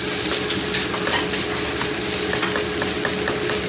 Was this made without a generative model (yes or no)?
yes